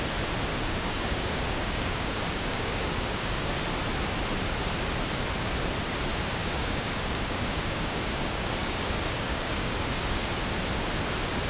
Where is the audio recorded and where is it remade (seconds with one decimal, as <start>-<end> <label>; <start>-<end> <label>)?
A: 0.0-0.5 recorded; 0.5-3.6 remade; 3.6-6.1 recorded; 6.1-10.3 remade; 10.3-11.5 recorded